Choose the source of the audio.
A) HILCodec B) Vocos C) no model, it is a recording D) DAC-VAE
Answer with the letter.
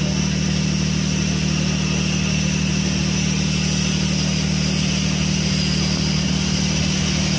C